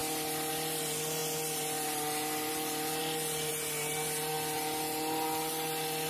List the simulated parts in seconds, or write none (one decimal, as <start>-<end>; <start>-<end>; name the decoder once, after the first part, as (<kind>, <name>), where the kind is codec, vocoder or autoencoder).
none

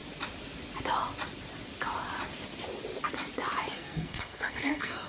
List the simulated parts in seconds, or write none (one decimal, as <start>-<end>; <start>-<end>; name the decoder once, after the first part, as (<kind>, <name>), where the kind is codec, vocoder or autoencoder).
3.7-5.1 (codec, SNAC)

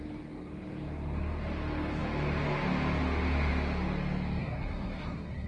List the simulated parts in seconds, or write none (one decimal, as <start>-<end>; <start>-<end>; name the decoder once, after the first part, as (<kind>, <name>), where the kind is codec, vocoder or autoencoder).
4.4-5.5 (codec, SNAC)

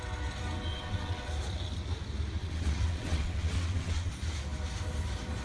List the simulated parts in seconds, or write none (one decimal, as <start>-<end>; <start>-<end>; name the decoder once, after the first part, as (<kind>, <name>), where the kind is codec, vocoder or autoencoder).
0.7-1.3 (vocoder, WaveNeXt); 2.4-4.1

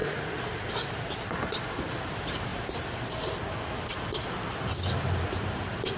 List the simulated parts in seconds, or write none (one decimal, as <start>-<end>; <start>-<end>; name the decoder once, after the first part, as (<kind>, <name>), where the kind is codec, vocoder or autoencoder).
none